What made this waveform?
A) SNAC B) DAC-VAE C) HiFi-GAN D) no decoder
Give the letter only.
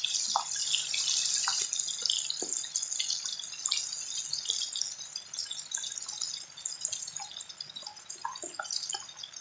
D